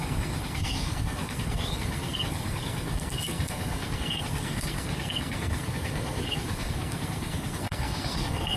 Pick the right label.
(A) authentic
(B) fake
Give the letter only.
B